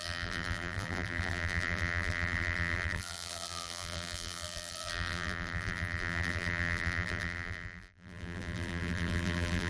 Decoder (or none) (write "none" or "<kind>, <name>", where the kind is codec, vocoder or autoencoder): vocoder, BigVGAN v2